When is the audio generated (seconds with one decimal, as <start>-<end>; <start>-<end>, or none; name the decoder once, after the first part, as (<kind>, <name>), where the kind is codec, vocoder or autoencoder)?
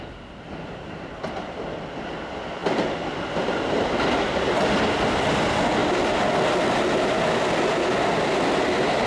none